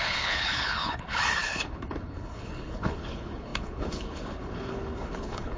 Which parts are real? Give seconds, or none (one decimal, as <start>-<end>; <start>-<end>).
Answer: none